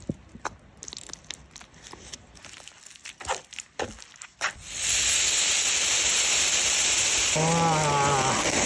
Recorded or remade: recorded